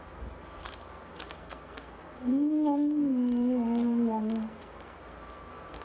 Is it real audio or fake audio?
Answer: fake